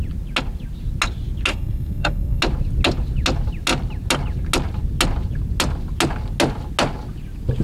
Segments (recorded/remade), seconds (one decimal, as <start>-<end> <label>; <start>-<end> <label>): 0.0-1.5 recorded; 1.5-2.4 remade; 2.4-7.6 recorded

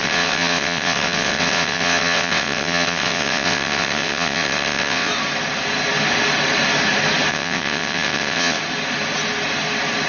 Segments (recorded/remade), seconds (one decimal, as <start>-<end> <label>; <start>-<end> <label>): 0.0-5.1 remade; 5.1-7.3 recorded; 7.3-8.6 remade; 8.6-10.1 recorded

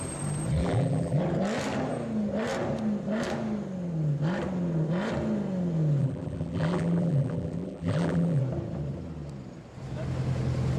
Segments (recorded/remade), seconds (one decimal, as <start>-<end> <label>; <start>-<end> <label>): 0.0-0.6 recorded; 0.6-1.2 remade; 1.2-6.0 recorded; 6.0-8.4 remade; 8.4-10.8 recorded

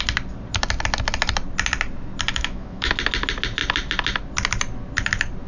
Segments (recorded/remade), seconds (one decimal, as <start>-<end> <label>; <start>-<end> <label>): 0.0-2.3 recorded; 2.3-2.9 remade; 2.9-5.5 recorded